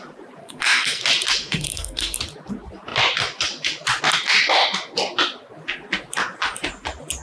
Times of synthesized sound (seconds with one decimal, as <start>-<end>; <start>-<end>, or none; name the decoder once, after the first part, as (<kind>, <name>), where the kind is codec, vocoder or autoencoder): 0.4-1.0 (codec, SNAC); 1.4-2.2